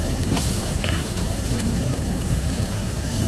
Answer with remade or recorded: remade